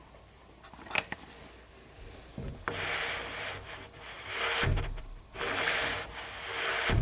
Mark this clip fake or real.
fake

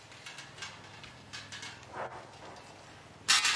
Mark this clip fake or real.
real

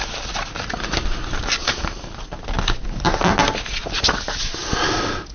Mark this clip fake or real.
real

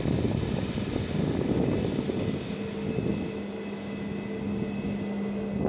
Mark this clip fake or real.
real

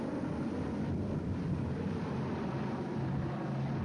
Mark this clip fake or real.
real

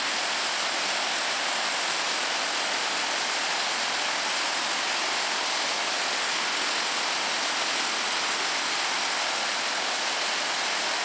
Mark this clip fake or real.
real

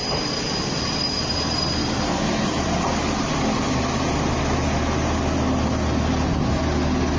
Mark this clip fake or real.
real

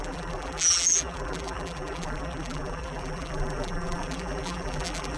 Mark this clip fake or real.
fake